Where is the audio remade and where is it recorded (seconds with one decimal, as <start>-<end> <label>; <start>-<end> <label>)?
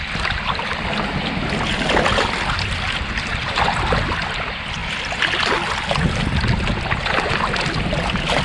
0.0-8.4 recorded